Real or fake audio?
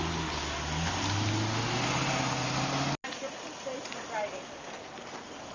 real